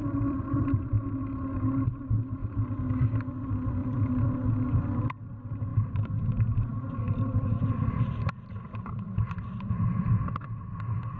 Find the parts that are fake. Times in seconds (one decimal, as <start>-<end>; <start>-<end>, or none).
0.0-0.8; 3.8-5.0; 5.7-11.2